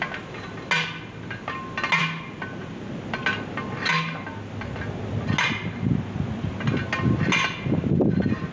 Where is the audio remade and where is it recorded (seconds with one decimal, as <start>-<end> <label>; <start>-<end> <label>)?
0.0-8.5 recorded